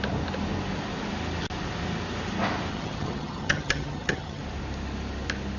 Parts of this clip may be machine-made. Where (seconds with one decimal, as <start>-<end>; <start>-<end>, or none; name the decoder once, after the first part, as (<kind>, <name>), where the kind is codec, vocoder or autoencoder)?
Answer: 2.7-4.4 (vocoder, HiFi-GAN)